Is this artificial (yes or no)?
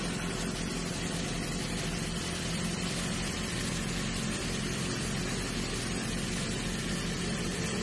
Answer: no